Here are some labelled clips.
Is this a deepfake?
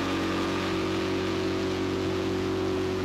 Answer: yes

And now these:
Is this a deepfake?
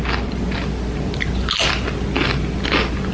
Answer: no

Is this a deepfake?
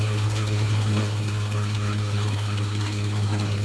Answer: yes